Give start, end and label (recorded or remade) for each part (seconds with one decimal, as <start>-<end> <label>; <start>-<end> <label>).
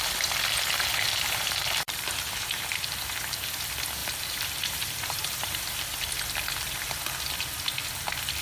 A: 0.0-1.1 recorded; 1.1-2.8 remade; 2.8-4.0 recorded; 4.0-5.6 remade; 5.6-8.4 recorded